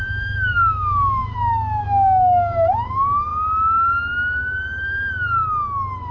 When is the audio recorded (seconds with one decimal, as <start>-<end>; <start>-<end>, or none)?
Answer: 3.3-6.1